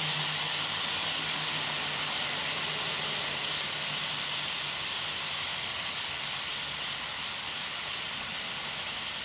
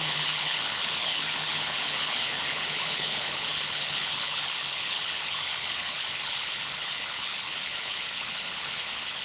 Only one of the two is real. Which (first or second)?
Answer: first